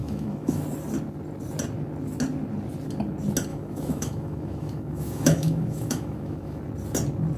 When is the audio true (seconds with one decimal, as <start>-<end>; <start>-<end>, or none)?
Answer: 0.6-3.5; 6.6-7.4